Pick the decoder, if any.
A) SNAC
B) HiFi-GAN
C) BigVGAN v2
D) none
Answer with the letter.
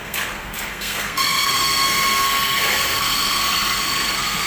A